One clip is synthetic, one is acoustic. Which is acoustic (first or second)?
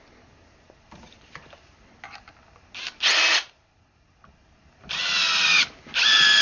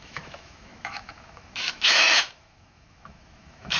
first